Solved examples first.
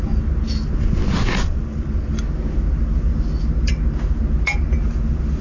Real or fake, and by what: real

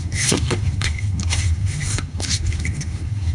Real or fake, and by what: fake, codec, SNAC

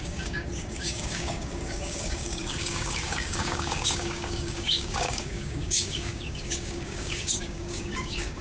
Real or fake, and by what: fake, codec, DAC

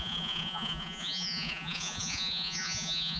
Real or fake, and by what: fake, vocoder, Vocos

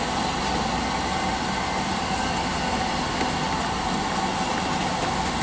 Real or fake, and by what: real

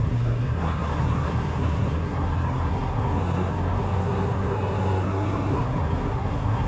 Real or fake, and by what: fake, codec, SNAC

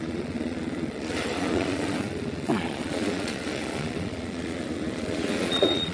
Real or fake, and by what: fake, vocoder, Vocos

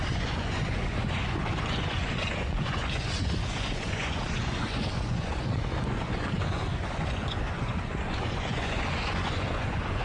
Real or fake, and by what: fake, vocoder, Vocos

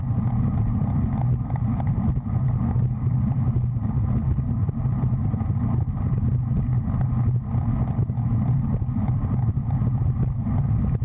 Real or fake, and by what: real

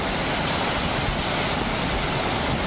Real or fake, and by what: real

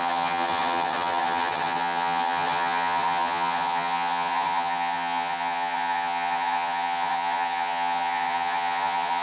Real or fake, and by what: fake, vocoder, HiFi-GAN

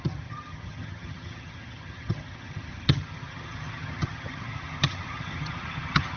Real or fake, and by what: fake, vocoder, HiFi-GAN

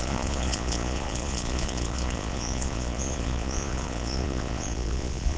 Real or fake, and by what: fake, vocoder, Vocos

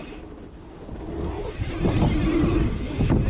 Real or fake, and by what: real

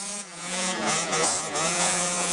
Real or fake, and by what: fake, vocoder, Vocos